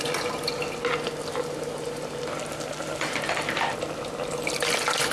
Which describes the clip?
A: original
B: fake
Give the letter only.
A